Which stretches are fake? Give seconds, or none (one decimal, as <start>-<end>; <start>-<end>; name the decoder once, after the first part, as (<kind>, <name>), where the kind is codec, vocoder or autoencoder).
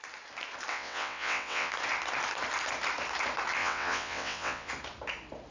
0.7-1.7 (vocoder, WaveNeXt); 3.6-4.7